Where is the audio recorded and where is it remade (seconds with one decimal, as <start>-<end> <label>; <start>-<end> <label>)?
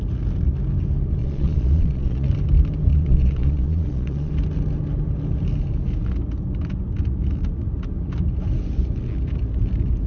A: 0.0-1.2 recorded; 1.2-2.3 remade; 2.3-2.9 recorded; 2.9-4.3 remade; 4.3-10.1 recorded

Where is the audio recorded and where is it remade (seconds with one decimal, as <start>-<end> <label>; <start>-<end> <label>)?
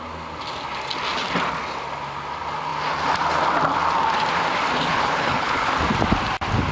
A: 0.0-4.9 recorded; 4.9-5.7 remade; 5.7-6.7 recorded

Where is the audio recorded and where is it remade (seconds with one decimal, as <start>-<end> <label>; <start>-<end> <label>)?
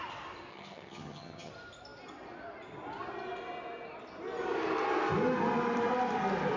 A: 0.0-0.5 recorded; 0.5-1.5 remade; 1.5-6.6 recorded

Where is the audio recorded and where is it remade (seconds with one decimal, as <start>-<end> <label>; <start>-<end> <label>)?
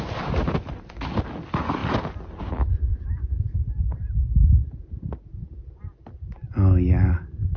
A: 0.0-7.6 recorded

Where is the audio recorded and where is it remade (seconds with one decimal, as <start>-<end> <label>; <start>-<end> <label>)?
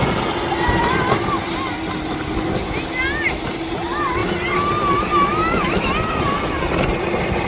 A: 0.0-5.3 recorded; 5.3-5.9 remade; 5.9-7.5 recorded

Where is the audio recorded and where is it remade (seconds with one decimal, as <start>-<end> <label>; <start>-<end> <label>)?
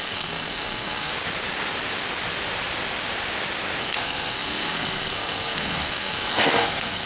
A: 0.0-1.1 remade; 1.1-3.8 recorded; 3.8-7.1 remade